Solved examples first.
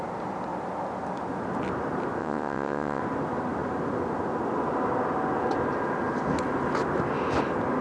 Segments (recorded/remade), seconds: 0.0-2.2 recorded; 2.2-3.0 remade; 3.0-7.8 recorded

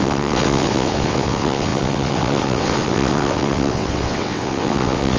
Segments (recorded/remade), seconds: 0.0-5.2 remade

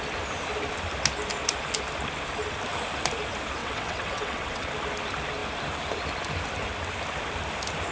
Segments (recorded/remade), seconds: 0.0-3.6 recorded; 3.6-4.7 remade; 4.7-7.9 recorded

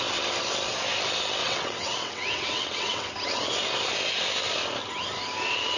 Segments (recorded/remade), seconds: 0.0-1.4 recorded; 1.4-3.1 remade; 3.1-5.8 recorded

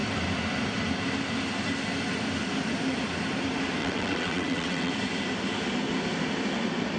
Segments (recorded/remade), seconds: 0.0-3.8 recorded; 3.8-4.9 remade; 4.9-7.0 recorded

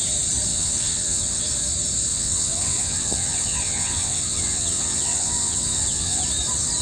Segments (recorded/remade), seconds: 0.0-0.5 recorded; 0.5-1.4 remade; 1.4-2.1 recorded; 2.1-6.2 remade; 6.2-6.8 recorded